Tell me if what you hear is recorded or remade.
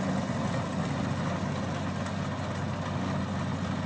recorded